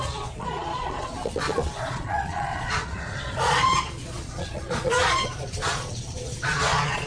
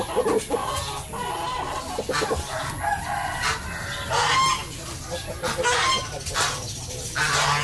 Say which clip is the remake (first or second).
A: first